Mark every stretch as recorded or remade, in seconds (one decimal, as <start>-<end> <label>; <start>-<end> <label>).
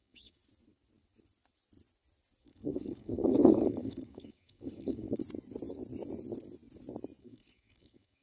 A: 0.0-0.4 remade; 0.4-2.4 recorded; 2.4-5.2 remade; 5.2-7.2 recorded; 7.2-8.2 remade